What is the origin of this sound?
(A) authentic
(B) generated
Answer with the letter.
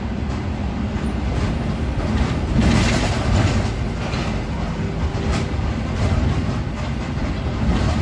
A